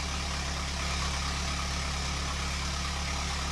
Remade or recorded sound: recorded